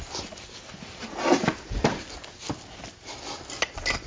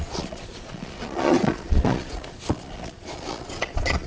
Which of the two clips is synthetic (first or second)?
second